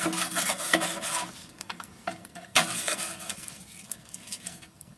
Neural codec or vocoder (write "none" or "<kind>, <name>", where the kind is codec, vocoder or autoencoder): codec, SNAC